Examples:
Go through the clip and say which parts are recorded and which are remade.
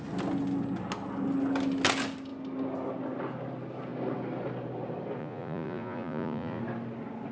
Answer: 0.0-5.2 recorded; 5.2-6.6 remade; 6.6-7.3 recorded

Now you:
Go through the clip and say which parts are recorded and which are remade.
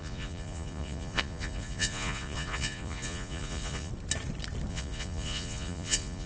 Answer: 0.0-3.9 remade; 3.9-4.7 recorded; 4.7-6.3 remade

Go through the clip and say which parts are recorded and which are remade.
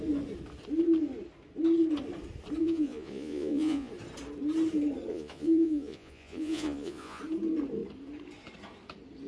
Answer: 0.0-2.6 recorded; 2.6-3.9 remade; 3.9-5.1 recorded; 5.1-7.2 remade; 7.2-9.3 recorded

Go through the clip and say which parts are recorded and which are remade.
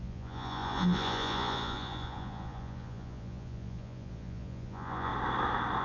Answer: 0.0-5.1 remade; 5.1-5.8 recorded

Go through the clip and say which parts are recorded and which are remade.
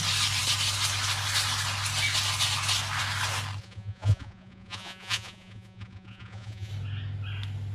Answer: 0.0-3.6 recorded; 3.6-6.7 remade; 6.7-7.7 recorded